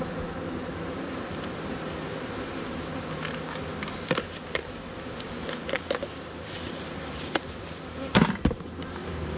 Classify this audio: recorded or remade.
recorded